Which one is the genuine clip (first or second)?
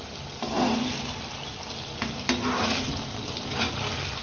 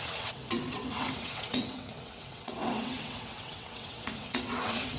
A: first